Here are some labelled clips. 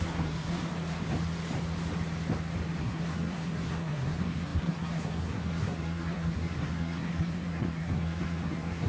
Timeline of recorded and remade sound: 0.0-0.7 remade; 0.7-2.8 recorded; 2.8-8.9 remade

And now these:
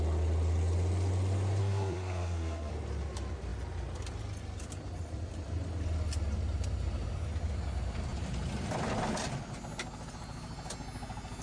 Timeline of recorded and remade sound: 0.0-1.6 recorded; 1.6-2.7 remade; 2.7-11.4 recorded

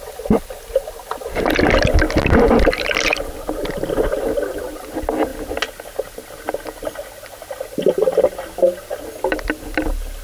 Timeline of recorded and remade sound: 0.0-10.2 recorded

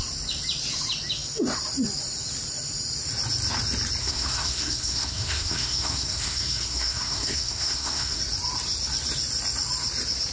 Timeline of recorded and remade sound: 0.0-4.0 recorded; 4.0-8.2 remade; 8.2-10.3 recorded